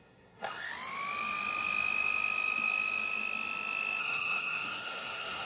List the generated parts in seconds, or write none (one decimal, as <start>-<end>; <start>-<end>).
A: 0.0-0.7; 4.0-5.5